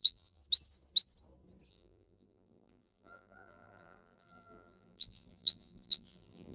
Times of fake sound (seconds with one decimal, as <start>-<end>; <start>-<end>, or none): 0.0-0.4; 1.7-6.5